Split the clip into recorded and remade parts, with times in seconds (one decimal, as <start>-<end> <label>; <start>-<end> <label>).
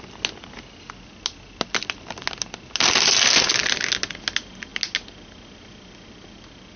0.0-6.8 recorded